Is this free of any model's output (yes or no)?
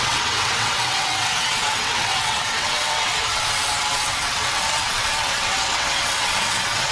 no